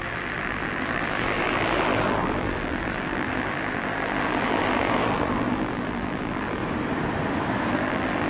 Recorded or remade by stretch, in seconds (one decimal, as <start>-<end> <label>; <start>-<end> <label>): 0.0-6.6 remade; 6.6-7.7 recorded; 7.7-8.3 remade

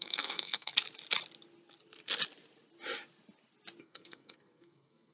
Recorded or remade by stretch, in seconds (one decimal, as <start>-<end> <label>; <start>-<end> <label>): 0.0-0.7 remade; 0.7-3.8 recorded; 3.8-5.1 remade